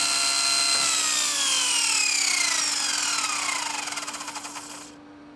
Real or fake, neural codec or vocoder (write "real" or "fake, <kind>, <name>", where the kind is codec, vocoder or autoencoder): real